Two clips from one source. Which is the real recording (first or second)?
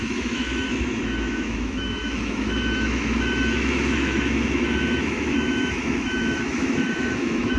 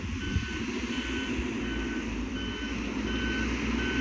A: second